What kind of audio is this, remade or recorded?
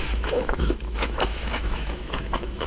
remade